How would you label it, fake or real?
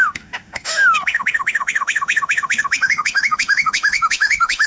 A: fake